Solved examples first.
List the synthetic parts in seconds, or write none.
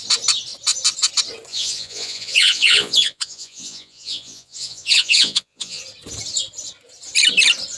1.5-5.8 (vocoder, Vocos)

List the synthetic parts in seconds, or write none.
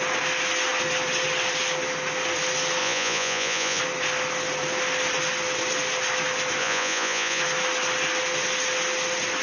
2.8-3.8 (vocoder, Vocos); 6.6-7.4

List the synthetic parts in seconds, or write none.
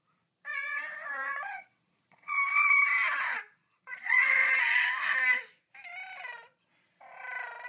0.5-2.4 (vocoder, Vocos); 3.6-4.9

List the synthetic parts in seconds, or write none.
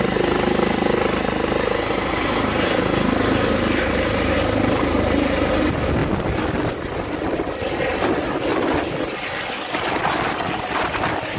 none